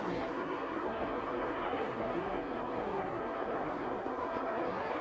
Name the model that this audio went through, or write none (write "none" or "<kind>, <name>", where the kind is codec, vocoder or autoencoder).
codec, SNAC